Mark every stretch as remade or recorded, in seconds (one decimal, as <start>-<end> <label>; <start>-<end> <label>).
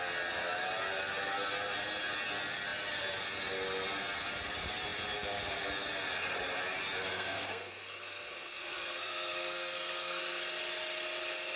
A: 0.0-7.1 recorded; 7.1-10.2 remade; 10.2-11.6 recorded